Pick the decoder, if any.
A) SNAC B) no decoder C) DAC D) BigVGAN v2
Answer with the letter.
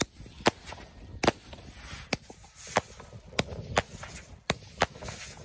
B